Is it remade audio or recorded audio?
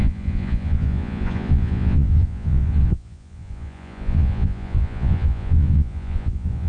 remade